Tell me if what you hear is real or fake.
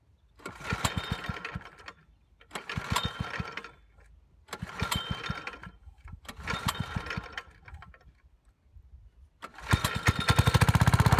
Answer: real